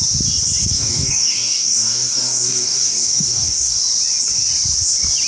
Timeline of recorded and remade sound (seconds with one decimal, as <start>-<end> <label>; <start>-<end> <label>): 0.0-0.6 recorded; 0.6-3.8 remade; 3.8-5.3 recorded